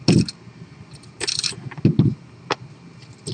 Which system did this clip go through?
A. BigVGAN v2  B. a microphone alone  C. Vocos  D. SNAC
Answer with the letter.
B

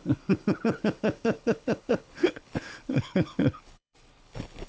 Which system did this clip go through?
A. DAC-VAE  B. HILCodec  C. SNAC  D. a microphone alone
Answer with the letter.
B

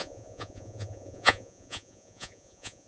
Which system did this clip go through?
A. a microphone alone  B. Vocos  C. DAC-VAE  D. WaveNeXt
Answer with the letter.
B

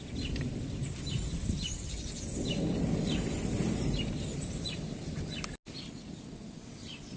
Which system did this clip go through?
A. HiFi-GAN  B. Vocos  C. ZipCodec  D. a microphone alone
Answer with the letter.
D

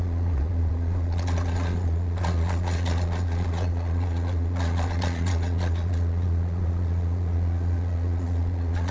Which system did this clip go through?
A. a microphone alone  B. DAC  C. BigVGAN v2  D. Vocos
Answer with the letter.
D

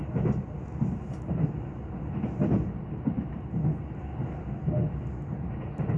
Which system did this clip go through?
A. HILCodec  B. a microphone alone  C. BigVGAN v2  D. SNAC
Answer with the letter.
B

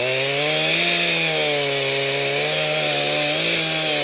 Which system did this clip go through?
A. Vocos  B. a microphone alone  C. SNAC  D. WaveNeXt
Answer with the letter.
B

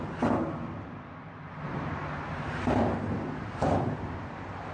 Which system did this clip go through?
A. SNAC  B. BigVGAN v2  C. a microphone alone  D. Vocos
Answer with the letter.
B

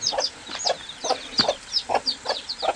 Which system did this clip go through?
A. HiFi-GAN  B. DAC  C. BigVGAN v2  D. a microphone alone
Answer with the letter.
C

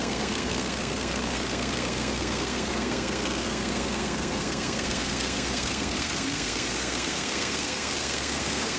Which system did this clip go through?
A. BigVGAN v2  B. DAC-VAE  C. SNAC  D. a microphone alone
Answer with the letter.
C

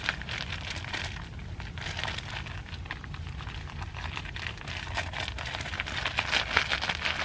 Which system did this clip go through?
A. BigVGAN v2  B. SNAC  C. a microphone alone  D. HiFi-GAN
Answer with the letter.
C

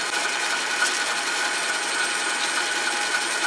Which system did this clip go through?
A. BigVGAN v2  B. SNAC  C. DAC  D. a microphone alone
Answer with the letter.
D